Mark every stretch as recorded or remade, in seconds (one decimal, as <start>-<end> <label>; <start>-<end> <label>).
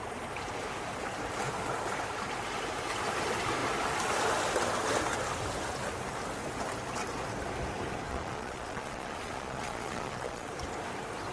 0.0-8.1 recorded; 8.1-10.5 remade; 10.5-11.3 recorded